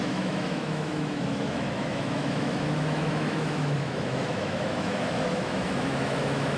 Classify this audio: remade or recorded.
remade